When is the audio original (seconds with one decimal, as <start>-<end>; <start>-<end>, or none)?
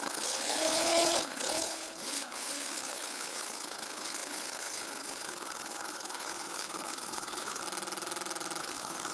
7.6-8.6